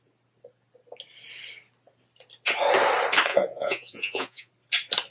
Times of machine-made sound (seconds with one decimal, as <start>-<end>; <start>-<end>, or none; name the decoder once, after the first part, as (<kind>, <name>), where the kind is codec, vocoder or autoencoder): 3.3-4.5 (vocoder, Vocos)